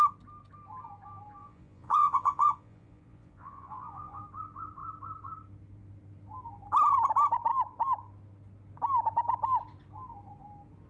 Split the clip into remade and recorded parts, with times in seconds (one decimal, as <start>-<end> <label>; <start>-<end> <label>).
0.0-1.4 recorded; 1.4-4.2 remade; 4.2-10.9 recorded